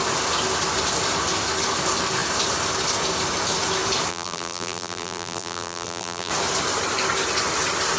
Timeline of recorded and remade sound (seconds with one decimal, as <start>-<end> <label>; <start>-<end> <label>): 0.0-4.1 recorded; 4.1-6.3 remade; 6.3-8.0 recorded